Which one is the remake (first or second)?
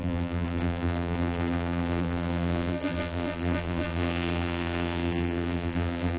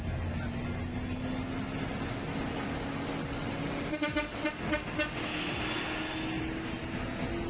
first